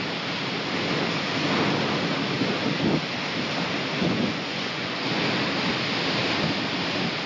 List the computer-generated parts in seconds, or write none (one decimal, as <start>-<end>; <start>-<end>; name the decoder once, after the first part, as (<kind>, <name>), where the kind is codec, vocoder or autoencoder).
4.0-5.2 (vocoder, Vocos)